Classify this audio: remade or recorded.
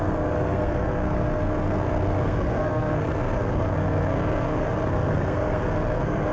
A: remade